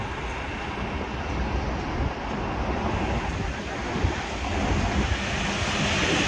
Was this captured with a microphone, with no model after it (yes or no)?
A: yes